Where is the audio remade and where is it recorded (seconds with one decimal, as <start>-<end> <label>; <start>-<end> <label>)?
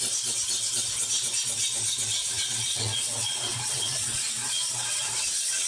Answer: 0.0-2.2 recorded; 2.2-5.7 remade